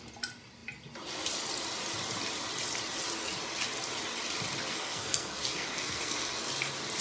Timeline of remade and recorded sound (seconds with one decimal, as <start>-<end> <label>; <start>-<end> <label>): 0.0-4.7 recorded; 4.7-6.5 remade; 6.5-7.0 recorded